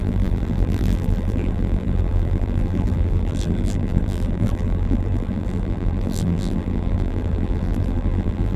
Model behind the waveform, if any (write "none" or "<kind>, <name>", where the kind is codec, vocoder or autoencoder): vocoder, BigVGAN v2